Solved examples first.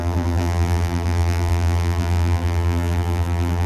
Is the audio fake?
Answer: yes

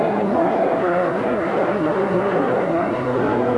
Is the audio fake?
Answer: yes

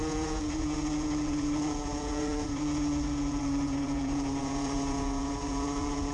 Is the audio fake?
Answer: yes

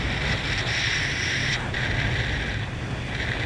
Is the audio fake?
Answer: no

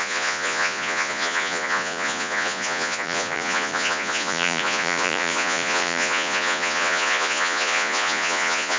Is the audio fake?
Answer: yes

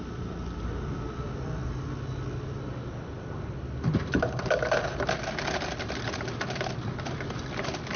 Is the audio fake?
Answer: yes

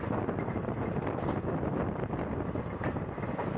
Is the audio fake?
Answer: no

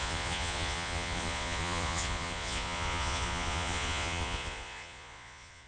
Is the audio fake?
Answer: yes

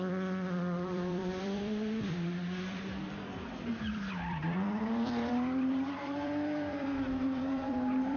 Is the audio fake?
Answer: yes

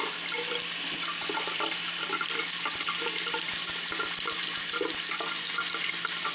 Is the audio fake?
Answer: no